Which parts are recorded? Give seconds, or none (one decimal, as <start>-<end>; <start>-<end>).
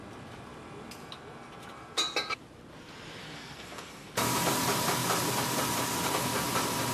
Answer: 0.0-3.2; 4.1-6.9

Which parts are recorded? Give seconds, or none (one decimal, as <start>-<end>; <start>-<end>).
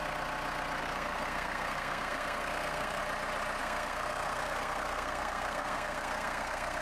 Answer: 0.0-0.8; 3.0-3.6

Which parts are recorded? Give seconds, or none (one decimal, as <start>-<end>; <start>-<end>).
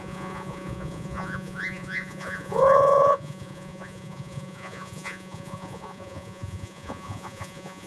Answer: none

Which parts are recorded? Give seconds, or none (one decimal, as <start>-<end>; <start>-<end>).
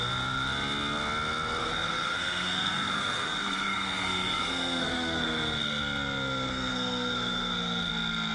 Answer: 0.0-1.6; 5.8-6.5; 7.9-8.3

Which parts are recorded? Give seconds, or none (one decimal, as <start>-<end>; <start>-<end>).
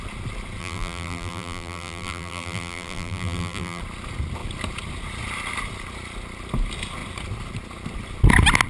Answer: 0.0-0.6; 3.8-8.7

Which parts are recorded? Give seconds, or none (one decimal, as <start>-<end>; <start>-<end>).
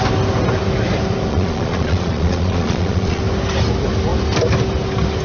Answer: 0.0-1.3; 3.2-5.2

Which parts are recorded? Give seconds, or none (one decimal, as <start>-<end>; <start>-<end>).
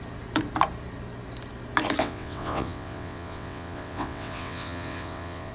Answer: 0.0-2.0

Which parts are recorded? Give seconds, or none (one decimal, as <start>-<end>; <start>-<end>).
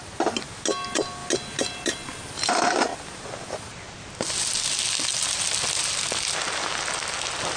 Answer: 0.0-7.6